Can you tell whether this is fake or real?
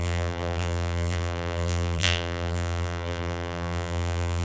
fake